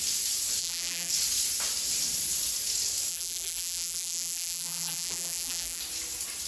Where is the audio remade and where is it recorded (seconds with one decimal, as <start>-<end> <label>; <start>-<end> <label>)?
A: 0.0-0.6 recorded; 0.6-1.1 remade; 1.1-3.1 recorded; 3.1-5.8 remade; 5.8-6.5 recorded